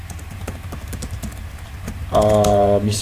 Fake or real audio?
fake